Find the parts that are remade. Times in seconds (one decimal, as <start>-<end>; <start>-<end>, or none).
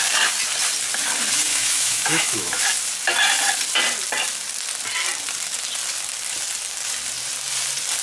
1.5-2.6